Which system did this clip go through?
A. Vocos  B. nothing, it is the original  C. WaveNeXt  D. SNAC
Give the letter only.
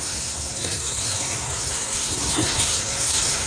D